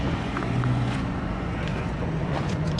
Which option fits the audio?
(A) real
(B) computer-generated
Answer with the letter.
B